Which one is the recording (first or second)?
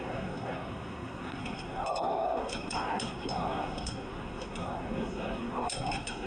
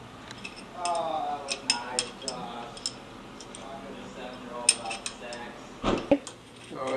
second